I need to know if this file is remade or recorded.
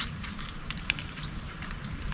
remade